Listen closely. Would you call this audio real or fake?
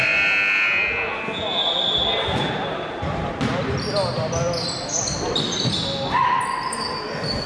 real